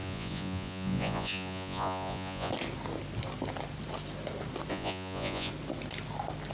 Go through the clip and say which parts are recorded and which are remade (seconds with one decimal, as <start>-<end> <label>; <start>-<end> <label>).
0.0-2.5 remade; 2.5-4.7 recorded; 4.7-5.5 remade; 5.5-6.5 recorded